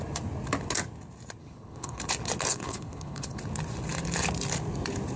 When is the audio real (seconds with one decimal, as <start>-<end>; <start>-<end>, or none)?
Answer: 0.0-1.4; 2.0-2.5; 3.4-5.2